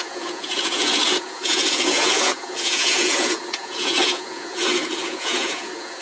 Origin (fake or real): fake